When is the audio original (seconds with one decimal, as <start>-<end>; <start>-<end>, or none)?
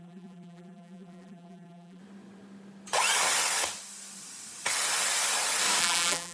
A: 2.0-5.8